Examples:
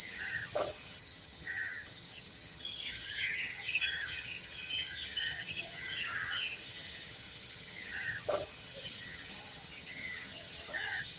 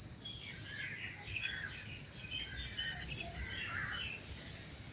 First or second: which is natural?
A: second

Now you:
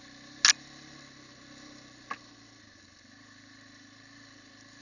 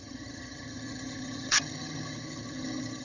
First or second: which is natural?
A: first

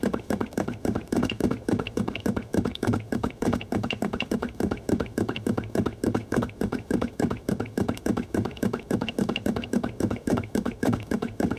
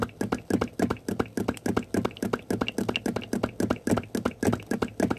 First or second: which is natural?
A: second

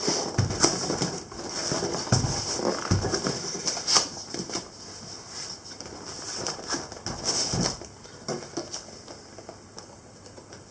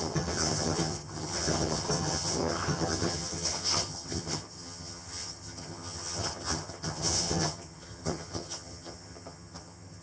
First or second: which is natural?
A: first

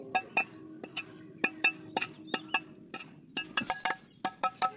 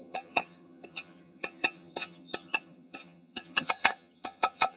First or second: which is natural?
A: first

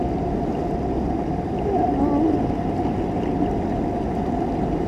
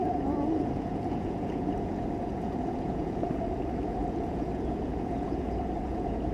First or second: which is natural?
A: first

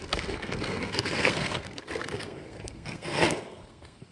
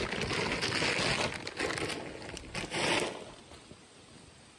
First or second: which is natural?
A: second